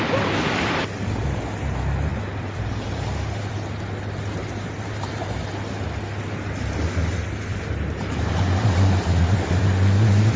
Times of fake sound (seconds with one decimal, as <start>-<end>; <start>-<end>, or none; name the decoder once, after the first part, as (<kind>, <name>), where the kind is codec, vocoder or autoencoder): 2.1-3.5 (vocoder, BigVGAN v2); 4.4-5.1; 7.5-9.6